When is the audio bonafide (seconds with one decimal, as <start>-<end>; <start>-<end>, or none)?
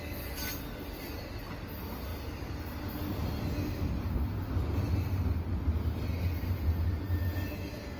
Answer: 0.0-8.0